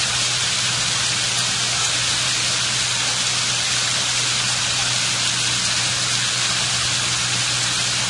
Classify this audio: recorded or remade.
recorded